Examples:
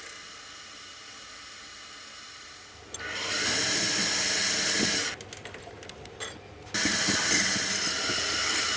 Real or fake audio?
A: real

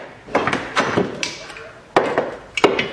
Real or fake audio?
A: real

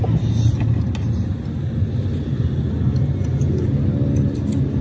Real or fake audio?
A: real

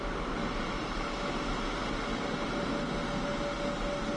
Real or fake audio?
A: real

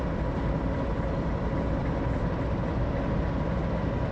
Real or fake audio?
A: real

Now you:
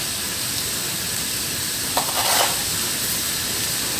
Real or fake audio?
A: real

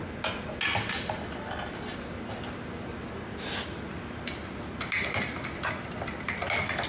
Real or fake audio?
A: real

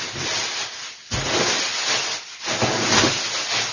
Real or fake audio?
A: real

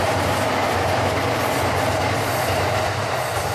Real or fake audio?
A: real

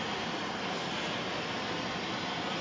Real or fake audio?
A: fake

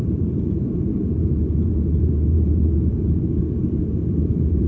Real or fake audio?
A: fake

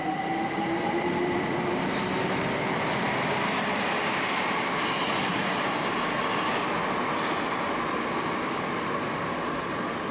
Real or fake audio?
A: real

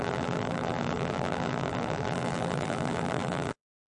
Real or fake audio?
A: fake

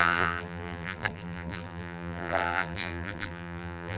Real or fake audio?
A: fake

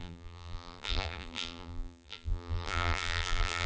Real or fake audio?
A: fake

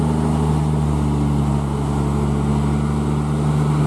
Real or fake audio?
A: real